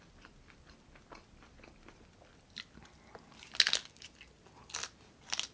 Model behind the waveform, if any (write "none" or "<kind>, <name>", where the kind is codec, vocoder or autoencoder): none